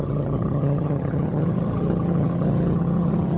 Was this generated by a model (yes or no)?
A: yes